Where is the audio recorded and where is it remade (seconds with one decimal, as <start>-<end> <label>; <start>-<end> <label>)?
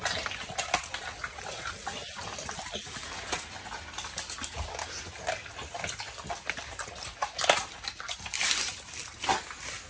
0.0-9.9 recorded